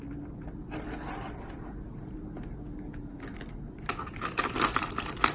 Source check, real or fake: real